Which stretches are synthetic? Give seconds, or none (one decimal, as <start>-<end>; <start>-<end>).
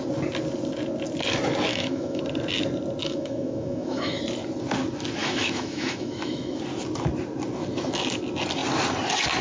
1.7-2.2; 3.0-4.2; 5.2-6.6